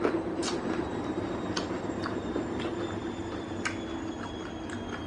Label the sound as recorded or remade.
recorded